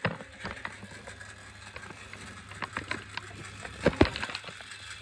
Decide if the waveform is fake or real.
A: real